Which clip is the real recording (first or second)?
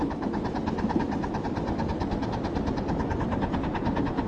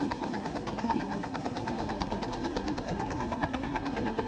first